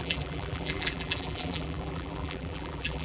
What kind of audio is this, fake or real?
fake